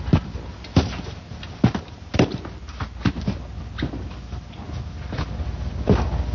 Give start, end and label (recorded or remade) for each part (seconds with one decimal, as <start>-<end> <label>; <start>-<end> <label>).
0.0-6.3 recorded